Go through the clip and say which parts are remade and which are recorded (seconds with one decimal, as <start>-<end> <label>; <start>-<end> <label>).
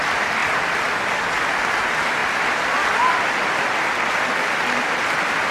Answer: 0.0-5.5 recorded